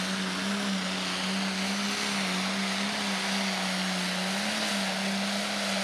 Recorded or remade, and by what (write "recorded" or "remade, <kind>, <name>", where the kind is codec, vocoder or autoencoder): recorded